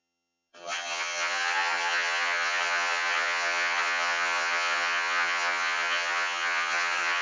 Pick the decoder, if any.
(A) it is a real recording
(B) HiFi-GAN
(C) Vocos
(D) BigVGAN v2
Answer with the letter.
B